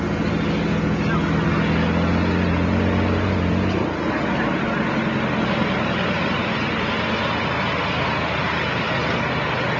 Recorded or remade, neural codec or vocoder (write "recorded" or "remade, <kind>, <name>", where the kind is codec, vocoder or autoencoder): recorded